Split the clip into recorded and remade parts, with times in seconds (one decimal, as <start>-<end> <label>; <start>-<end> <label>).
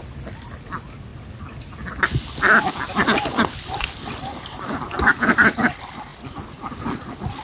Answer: 0.0-7.4 recorded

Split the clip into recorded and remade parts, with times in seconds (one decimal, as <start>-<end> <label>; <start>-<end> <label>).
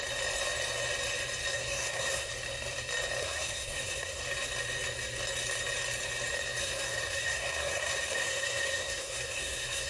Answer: 0.0-1.5 recorded; 1.5-2.3 remade; 2.3-3.2 recorded; 3.2-4.2 remade; 4.2-6.6 recorded; 6.6-9.9 remade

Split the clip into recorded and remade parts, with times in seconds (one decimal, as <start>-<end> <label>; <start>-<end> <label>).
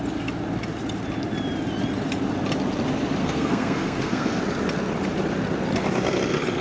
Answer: 0.0-3.2 recorded; 3.2-4.4 remade; 4.4-6.6 recorded